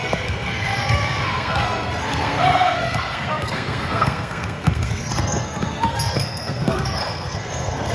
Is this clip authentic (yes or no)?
no